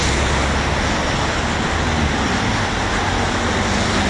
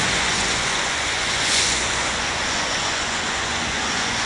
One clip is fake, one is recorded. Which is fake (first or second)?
second